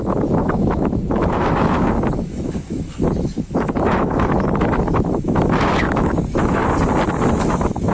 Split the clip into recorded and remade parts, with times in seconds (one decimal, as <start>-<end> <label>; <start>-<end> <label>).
0.0-6.6 remade; 6.6-7.3 recorded; 7.3-7.9 remade